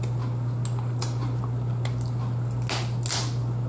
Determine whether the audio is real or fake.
real